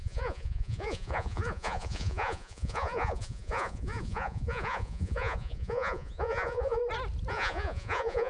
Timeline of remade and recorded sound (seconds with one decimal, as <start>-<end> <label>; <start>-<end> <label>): 0.0-6.8 remade; 6.8-7.3 recorded; 7.3-8.3 remade